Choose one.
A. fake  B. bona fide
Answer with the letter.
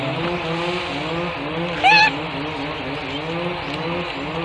B